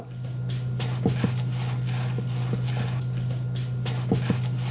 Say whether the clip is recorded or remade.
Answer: recorded